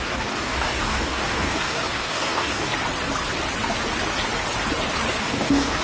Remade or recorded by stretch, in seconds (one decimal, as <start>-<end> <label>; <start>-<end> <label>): 0.0-2.7 remade; 2.7-5.2 recorded; 5.2-5.8 remade